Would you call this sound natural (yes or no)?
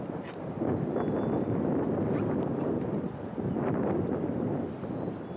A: yes